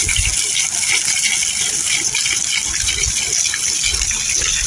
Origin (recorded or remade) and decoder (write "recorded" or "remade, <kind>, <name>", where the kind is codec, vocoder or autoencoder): recorded